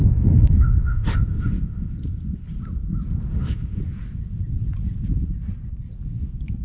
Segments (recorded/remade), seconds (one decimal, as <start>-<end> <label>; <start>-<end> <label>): 0.0-1.9 remade; 1.9-3.3 recorded; 3.3-3.8 remade; 3.8-6.6 recorded